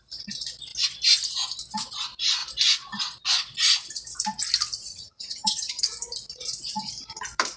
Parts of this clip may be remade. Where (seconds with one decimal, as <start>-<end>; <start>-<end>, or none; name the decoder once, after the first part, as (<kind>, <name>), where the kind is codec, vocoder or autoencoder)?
4.9-5.8 (vocoder, HiFi-GAN)